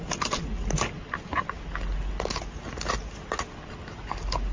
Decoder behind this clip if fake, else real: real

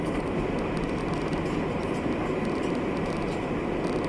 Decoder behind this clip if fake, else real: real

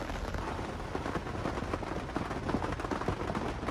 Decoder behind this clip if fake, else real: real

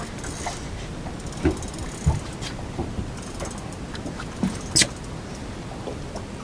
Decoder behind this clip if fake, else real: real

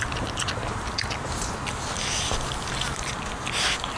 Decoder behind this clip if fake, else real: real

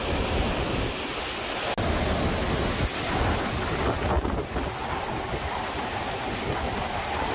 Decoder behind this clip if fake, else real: real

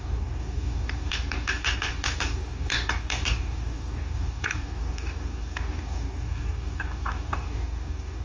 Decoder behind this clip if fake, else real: fake, codec, DAC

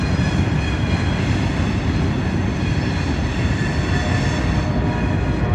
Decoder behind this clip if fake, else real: real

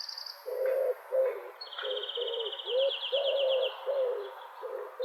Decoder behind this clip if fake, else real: real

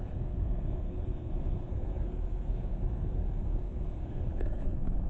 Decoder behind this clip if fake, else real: fake, codec, SNAC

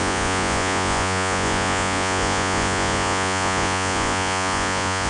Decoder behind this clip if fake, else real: fake, vocoder, Vocos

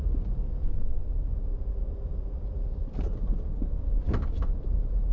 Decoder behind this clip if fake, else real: real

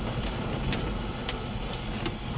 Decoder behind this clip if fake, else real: real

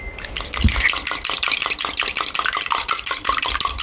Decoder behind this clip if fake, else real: real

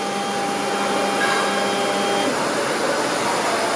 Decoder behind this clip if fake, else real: real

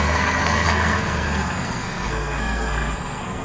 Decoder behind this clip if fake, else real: fake, codec, SNAC